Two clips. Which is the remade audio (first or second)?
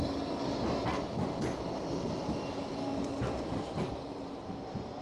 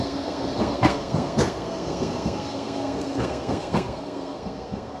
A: second